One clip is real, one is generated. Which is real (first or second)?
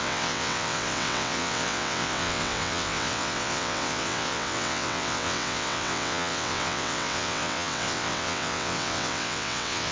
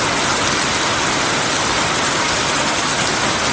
second